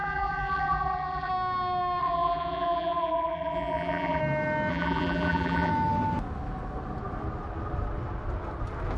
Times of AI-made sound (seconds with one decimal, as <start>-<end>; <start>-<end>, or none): 0.0-1.3; 2.0-4.2; 4.7-5.7